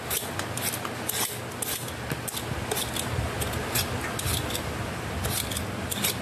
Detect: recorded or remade recorded